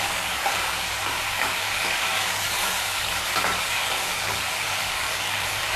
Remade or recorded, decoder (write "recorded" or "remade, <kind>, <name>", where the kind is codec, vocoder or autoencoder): remade, codec, DAC